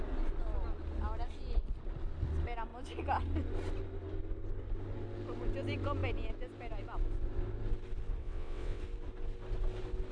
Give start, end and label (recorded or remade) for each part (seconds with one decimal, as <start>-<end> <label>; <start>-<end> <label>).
0.0-8.2 recorded; 8.2-8.8 remade; 8.8-10.1 recorded